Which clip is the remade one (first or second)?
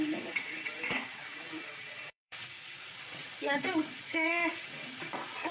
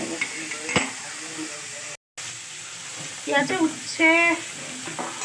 first